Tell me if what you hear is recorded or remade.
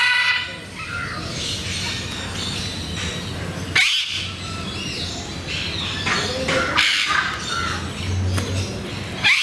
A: recorded